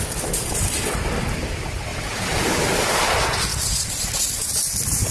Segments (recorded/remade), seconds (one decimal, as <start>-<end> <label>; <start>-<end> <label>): 0.0-5.1 recorded